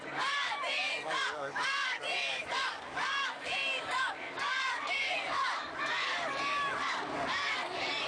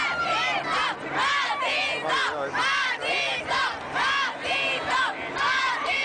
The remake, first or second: first